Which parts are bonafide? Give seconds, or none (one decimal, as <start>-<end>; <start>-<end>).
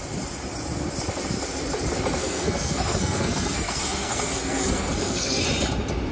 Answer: 0.0-2.2; 5.4-6.1